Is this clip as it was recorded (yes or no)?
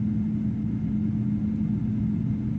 yes